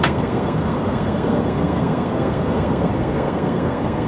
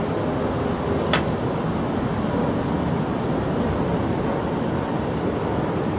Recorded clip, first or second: second